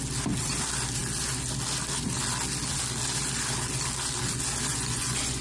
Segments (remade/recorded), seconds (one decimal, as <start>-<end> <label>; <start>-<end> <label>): 0.0-4.7 recorded; 4.7-5.4 remade